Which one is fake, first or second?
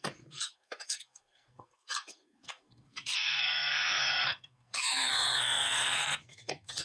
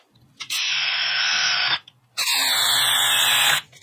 first